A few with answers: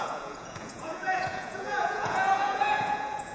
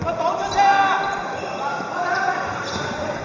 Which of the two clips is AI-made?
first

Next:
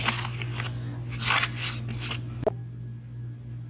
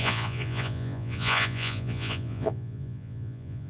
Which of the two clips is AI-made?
second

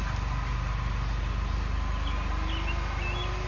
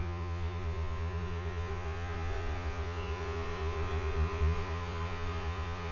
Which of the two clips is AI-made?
second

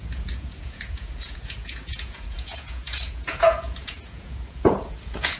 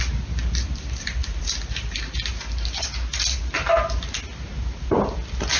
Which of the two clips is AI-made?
first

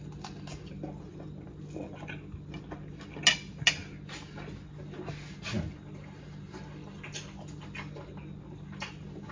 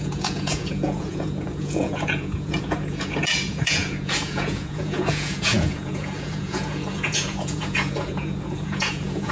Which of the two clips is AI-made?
second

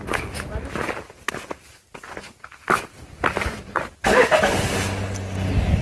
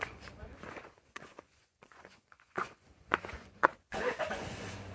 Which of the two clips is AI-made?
second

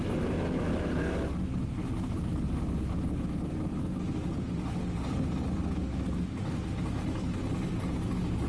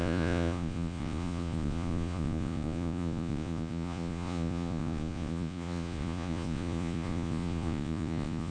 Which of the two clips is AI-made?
second